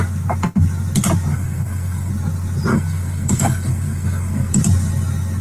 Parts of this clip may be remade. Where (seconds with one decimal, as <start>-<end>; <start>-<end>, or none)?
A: 1.3-2.1; 2.7-4.5